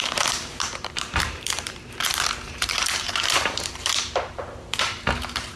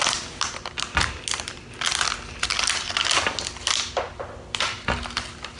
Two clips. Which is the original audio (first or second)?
second